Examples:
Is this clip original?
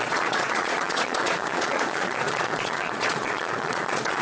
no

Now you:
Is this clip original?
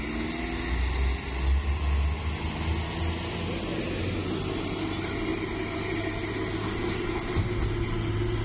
yes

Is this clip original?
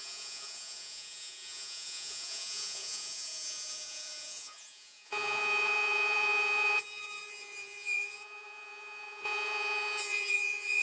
no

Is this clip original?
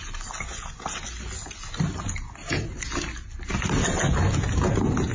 yes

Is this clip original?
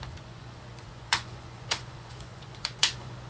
no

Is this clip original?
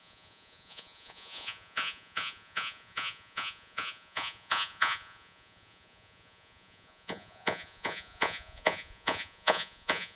no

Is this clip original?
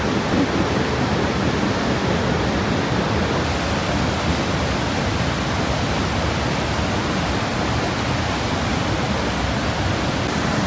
yes